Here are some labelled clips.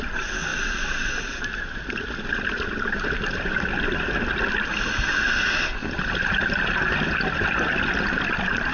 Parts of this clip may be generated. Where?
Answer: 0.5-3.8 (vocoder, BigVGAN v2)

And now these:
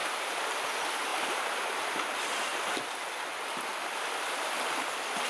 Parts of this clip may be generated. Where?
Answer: 0.0-2.5 (vocoder, BigVGAN v2); 3.5-5.3

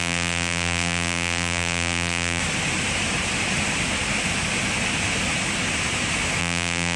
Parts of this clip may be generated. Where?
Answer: 0.0-2.4 (vocoder, BigVGAN v2); 6.4-7.0

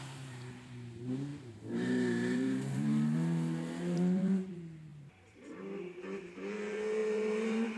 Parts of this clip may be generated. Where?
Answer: 0.0-7.8 (vocoder, BigVGAN v2)